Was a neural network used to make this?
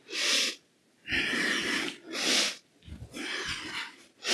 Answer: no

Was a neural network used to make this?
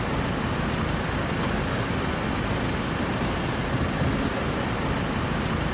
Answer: no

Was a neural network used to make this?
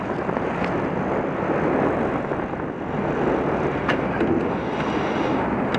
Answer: no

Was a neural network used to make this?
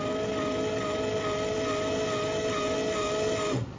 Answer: no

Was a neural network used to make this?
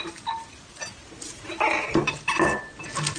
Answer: no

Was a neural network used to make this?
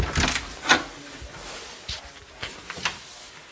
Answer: no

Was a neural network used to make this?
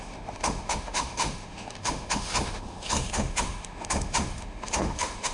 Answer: yes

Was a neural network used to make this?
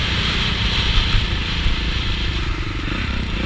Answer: yes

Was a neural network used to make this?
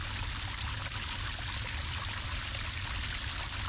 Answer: no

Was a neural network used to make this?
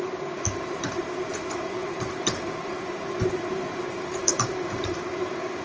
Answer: yes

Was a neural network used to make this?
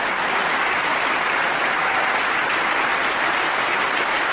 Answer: no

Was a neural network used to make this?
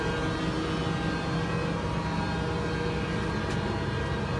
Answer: no